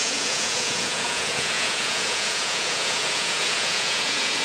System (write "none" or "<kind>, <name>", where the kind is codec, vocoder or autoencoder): vocoder, Vocos